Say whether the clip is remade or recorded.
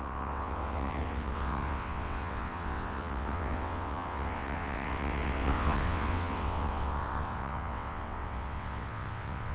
remade